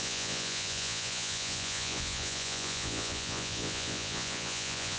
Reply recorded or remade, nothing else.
remade